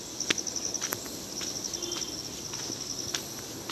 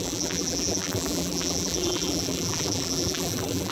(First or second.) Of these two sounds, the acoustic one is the first